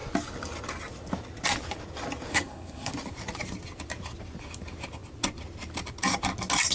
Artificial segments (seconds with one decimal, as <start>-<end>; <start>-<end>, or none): 2.3-2.9